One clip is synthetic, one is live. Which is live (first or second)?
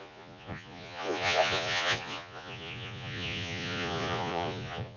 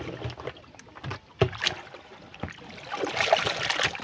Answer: second